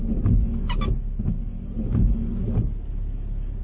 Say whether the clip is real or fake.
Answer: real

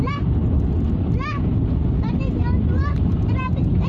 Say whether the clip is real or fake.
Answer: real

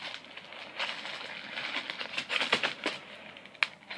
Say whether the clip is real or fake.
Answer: real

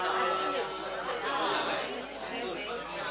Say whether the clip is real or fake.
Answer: real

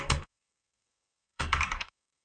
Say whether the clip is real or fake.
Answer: fake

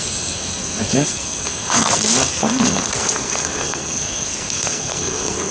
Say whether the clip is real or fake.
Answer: fake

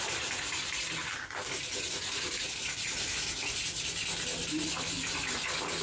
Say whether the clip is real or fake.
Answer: real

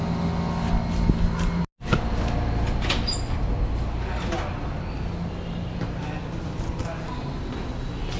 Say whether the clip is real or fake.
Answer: real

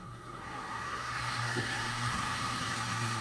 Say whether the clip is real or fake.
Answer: fake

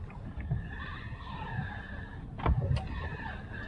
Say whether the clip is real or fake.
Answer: real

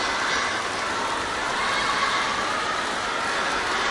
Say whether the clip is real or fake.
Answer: real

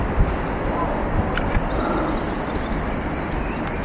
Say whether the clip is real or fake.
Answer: real